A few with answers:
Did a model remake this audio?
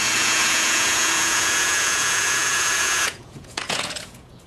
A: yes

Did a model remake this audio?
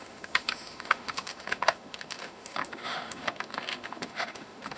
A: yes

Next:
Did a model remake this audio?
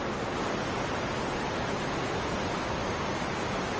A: no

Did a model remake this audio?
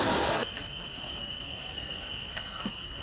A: yes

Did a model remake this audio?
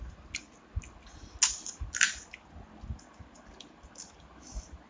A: no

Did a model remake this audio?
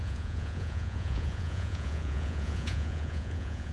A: yes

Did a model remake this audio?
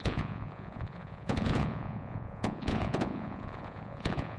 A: yes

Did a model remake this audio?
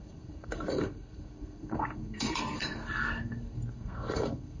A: yes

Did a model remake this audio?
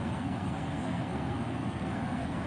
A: yes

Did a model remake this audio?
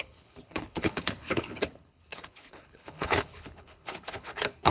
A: yes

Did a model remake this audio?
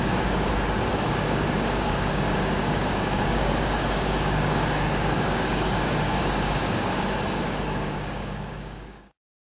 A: yes